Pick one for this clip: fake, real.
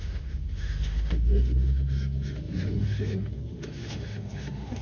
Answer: fake